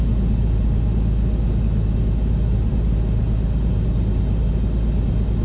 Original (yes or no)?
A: yes